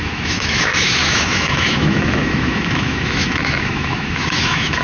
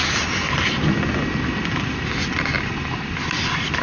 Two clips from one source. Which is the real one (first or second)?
second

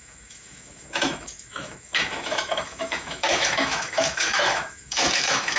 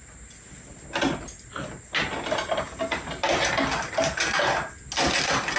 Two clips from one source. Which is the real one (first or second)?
second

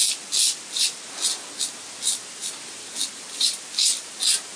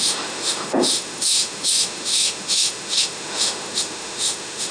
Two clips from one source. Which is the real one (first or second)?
first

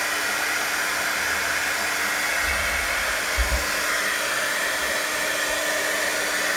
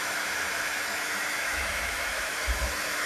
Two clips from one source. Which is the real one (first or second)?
first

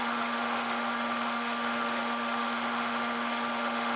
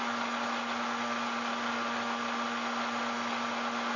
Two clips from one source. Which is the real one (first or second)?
second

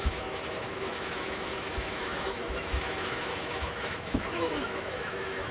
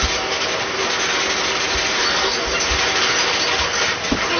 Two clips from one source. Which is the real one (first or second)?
second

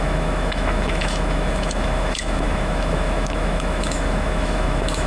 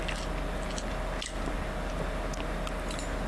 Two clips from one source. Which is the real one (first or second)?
second